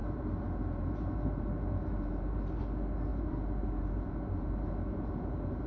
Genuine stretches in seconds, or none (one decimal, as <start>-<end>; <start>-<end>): 2.6-3.1